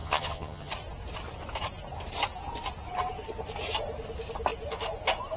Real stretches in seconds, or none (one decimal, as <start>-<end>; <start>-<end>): 0.7-5.4